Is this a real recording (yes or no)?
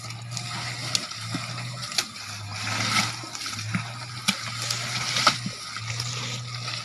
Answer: yes